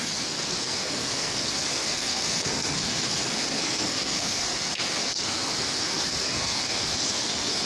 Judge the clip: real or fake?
fake